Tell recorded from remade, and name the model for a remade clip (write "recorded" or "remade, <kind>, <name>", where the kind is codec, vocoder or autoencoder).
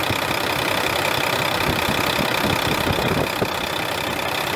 recorded